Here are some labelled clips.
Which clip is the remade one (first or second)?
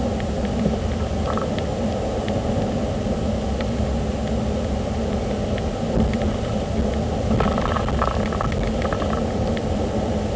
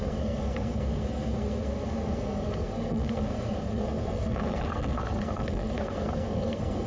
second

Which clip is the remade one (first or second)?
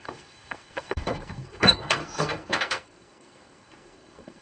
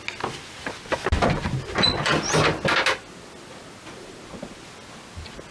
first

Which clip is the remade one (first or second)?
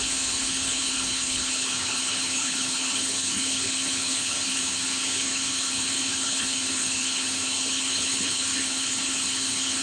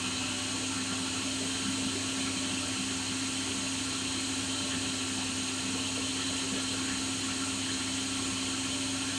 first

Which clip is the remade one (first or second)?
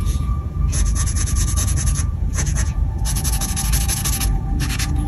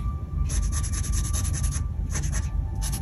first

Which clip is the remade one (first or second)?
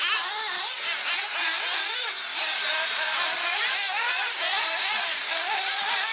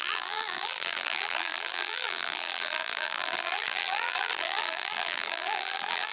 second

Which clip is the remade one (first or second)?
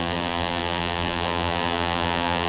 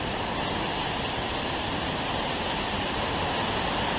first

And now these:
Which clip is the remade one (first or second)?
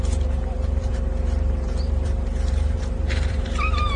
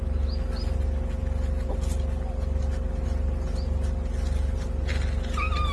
first